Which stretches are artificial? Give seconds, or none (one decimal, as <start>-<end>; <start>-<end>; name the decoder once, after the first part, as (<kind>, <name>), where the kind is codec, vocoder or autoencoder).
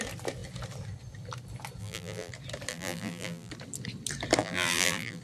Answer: 1.8-2.3 (vocoder, BigVGAN v2); 2.7-3.5; 4.4-5.2